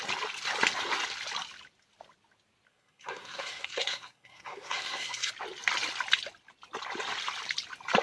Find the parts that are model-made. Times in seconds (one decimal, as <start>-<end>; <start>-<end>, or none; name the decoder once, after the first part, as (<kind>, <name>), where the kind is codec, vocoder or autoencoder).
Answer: 2.7-5.3 (codec, SNAC)